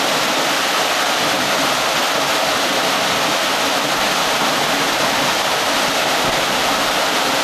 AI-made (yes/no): no